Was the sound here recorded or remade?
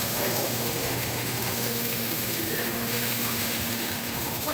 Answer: remade